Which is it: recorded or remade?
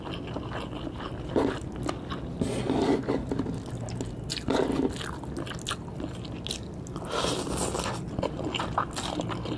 recorded